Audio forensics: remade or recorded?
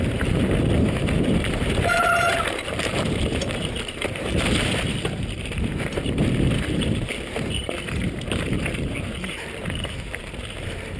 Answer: remade